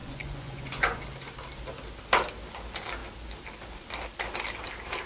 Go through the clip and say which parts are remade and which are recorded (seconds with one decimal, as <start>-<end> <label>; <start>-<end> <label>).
0.0-1.0 remade; 1.0-5.1 recorded